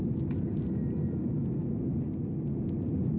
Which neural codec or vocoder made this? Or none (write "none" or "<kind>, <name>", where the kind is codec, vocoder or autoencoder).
none